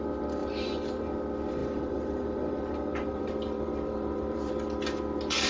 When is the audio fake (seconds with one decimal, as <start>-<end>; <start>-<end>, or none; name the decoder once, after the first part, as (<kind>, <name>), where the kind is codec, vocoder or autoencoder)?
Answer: 0.4-1.1 (vocoder, BigVGAN v2); 1.6-4.5